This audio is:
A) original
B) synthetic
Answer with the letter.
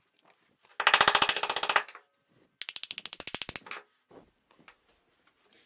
A